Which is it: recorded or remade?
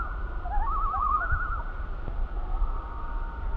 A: recorded